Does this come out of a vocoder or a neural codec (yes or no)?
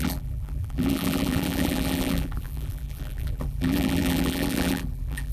yes